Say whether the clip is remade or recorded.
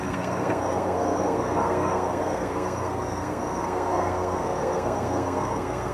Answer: remade